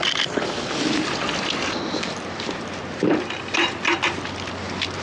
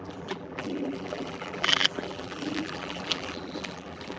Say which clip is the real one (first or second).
first